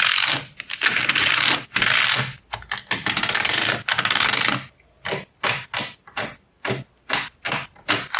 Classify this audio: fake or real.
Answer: real